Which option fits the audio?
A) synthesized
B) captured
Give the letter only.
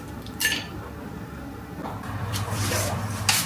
A